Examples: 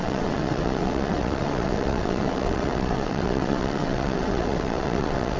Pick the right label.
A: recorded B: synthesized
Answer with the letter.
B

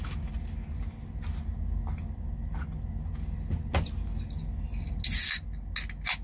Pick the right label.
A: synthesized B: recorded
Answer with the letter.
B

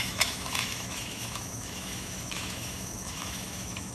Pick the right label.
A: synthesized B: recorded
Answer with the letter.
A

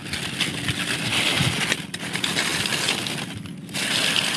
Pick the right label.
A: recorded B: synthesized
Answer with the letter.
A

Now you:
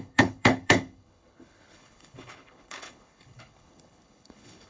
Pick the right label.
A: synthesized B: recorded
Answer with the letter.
A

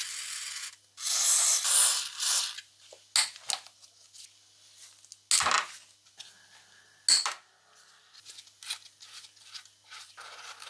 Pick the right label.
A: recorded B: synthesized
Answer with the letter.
A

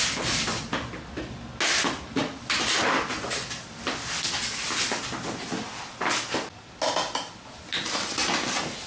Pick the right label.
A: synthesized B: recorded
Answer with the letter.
B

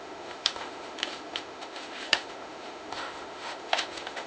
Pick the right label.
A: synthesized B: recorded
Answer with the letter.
A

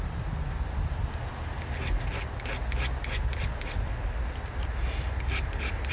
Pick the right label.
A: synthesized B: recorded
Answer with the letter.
B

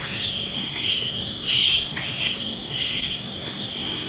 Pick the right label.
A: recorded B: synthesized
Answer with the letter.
B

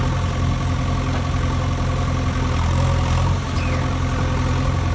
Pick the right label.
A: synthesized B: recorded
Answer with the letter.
B